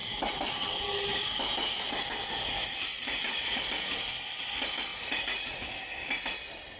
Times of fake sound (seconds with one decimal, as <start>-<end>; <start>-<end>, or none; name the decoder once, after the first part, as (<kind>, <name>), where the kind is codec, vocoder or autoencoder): 2.9-3.6 (vocoder, Vocos); 4.9-5.7